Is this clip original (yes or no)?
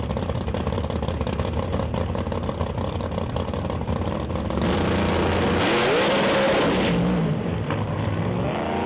yes